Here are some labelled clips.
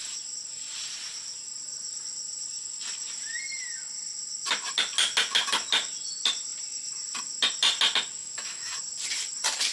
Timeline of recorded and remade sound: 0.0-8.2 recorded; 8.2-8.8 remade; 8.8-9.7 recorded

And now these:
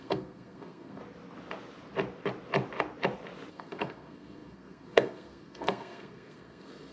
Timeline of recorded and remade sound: 0.0-1.0 remade; 1.0-3.5 recorded; 3.5-6.9 remade

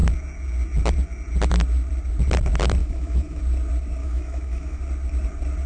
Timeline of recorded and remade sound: 0.0-2.8 recorded; 2.8-3.4 remade; 3.4-4.0 recorded; 4.0-4.8 remade; 4.8-5.7 recorded